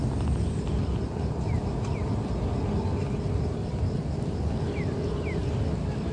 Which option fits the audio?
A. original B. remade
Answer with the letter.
A